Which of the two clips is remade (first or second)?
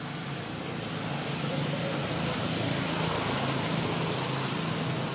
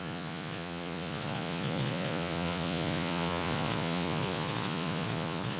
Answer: second